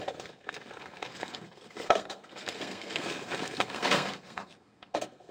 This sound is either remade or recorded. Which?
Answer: remade